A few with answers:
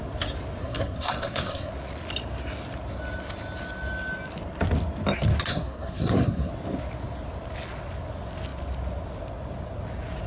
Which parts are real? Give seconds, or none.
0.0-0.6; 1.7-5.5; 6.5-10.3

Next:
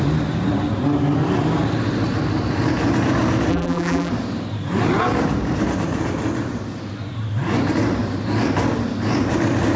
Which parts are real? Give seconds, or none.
0.0-3.5; 4.1-9.8

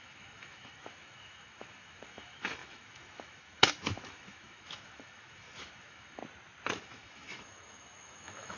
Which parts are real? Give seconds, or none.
6.2-6.8

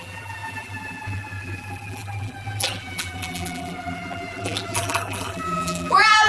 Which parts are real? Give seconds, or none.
none

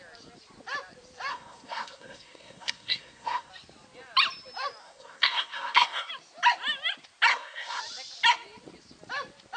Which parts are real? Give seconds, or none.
0.0-1.3; 3.5-4.8; 6.1-7.3; 7.8-9.6

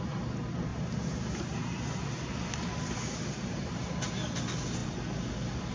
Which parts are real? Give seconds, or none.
0.0-0.7; 4.1-5.7

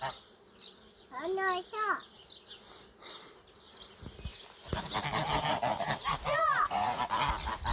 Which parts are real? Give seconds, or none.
0.0-6.3; 7.0-7.7

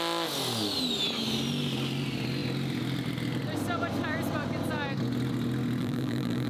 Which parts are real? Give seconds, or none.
0.0-5.8